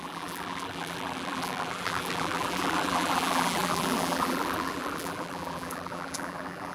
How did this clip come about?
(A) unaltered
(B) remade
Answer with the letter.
B